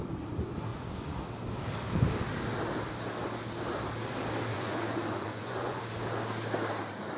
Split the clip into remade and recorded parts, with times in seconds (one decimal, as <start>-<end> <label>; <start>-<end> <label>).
0.0-0.7 recorded; 0.7-1.2 remade; 1.2-4.5 recorded; 4.5-5.8 remade; 5.8-7.2 recorded